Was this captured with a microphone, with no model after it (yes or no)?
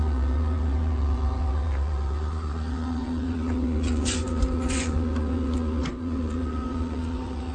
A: no